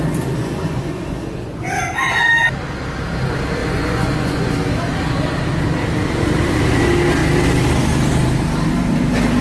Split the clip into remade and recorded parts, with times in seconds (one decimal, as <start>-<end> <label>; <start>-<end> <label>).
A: 0.0-0.4 recorded; 0.4-1.7 remade; 1.7-3.6 recorded; 3.6-4.5 remade; 4.5-9.4 recorded